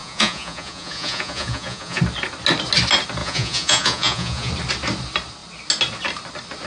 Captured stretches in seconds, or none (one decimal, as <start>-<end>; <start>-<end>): 2.0-3.2; 4.5-6.7